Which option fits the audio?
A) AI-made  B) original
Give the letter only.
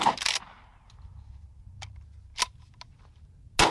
B